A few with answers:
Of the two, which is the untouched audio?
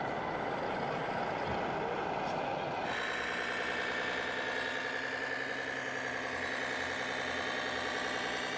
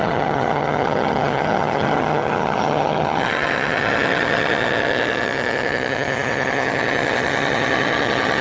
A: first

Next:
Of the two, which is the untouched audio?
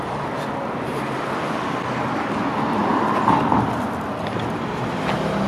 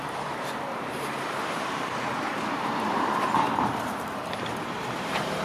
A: first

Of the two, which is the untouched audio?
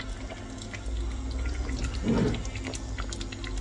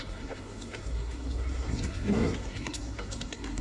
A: first